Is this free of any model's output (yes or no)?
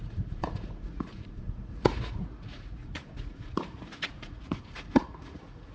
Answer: no